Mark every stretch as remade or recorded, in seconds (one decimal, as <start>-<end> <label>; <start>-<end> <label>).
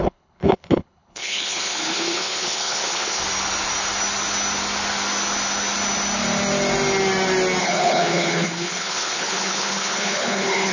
0.0-3.2 remade; 3.2-7.6 recorded; 7.6-10.7 remade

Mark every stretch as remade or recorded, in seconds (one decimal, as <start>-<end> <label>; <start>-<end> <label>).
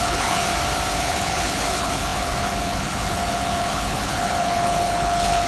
0.0-0.5 remade; 0.5-1.0 recorded; 1.0-5.5 remade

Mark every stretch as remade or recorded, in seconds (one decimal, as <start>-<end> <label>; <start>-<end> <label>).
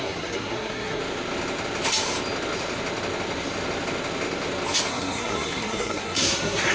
0.0-1.0 remade; 1.0-4.9 recorded; 4.9-6.7 remade